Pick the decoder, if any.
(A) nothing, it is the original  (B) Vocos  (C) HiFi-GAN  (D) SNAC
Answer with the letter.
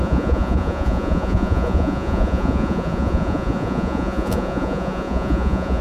B